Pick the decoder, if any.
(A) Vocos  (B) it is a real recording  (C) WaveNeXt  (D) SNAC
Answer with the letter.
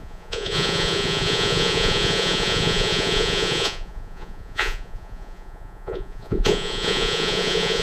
A